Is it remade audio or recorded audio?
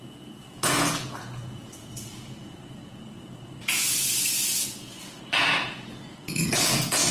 remade